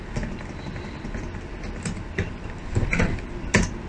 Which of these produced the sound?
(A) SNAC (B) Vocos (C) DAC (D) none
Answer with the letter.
D